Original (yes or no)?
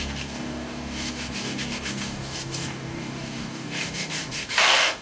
no